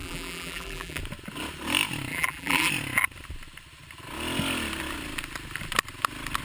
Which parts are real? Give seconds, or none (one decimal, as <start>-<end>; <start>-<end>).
1.0-2.1; 2.7-6.4

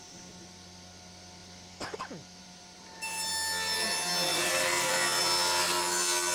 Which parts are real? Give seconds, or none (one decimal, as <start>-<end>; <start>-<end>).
0.0-2.4; 3.3-4.3; 4.9-6.3

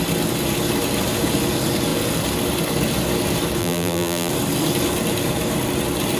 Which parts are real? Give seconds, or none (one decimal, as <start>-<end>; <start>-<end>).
0.0-3.6; 4.3-6.2

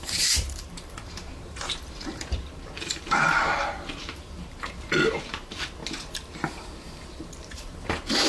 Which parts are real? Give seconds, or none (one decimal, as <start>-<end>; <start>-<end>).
5.8-7.4

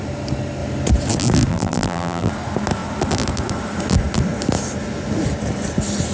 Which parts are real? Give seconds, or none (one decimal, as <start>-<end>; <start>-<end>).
0.0-1.5; 2.3-6.1

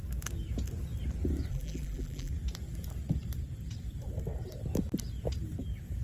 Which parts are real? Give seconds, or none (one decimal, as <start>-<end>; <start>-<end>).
0.0-1.5; 2.3-6.0

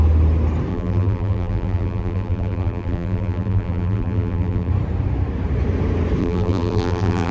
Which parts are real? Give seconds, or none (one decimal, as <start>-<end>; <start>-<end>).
0.0-0.7; 4.7-6.2

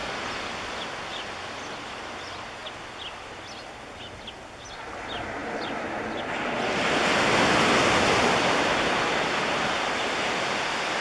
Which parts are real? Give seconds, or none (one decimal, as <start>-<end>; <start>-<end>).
0.7-11.0